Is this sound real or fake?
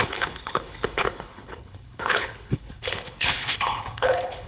fake